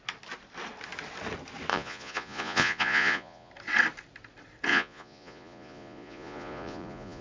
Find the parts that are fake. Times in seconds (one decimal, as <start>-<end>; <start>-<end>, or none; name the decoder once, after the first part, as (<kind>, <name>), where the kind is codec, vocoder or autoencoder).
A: 1.7-3.5 (vocoder, Vocos); 4.7-7.2

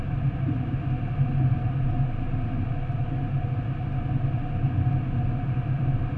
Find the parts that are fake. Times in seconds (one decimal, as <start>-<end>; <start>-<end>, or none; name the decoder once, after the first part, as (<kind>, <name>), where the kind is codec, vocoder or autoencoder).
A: none

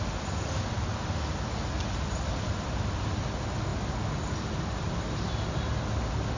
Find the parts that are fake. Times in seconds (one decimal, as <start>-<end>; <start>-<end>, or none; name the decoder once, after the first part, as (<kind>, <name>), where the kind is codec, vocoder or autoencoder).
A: none

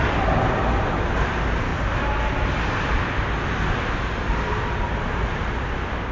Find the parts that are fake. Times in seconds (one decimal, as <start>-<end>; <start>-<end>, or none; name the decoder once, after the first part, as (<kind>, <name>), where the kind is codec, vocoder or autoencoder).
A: none

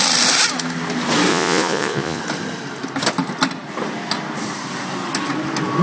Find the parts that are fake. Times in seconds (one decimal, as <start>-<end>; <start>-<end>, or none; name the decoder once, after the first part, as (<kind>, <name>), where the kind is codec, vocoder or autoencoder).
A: 1.3-2.2 (vocoder, Vocos)

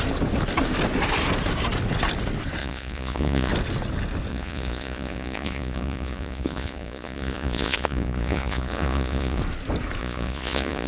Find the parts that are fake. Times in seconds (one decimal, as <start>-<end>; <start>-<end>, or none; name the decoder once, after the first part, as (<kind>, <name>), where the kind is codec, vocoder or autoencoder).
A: 2.6-3.5 (vocoder, Vocos); 4.3-9.4; 10.0-10.9

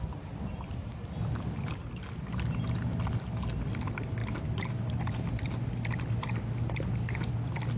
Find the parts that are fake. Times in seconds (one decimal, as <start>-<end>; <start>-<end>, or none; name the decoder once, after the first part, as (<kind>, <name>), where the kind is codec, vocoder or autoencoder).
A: none